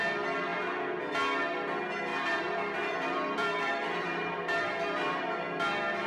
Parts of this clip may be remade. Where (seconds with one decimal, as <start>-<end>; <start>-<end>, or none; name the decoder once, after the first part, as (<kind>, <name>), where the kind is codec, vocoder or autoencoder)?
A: 2.1-5.2 (vocoder, BigVGAN v2)